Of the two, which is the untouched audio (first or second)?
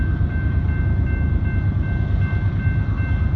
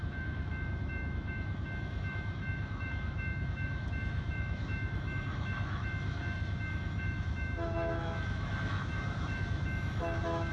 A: first